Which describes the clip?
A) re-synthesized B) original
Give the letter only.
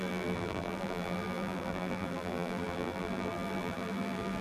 A